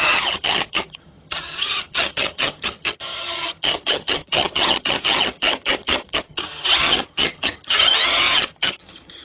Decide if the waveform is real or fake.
fake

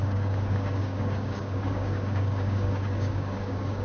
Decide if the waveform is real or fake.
fake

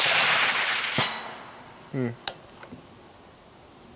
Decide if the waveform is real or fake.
real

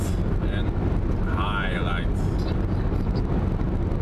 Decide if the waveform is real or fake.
real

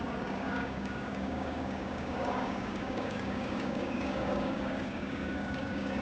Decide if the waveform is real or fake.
fake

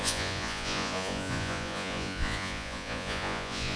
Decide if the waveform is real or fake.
fake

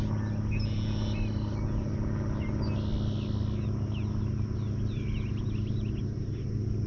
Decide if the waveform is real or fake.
real